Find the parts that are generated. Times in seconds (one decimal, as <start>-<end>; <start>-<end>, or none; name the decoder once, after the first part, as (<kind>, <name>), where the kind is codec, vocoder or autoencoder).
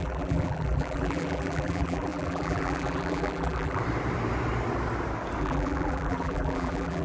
0.0-3.8 (vocoder, BigVGAN v2); 5.4-7.0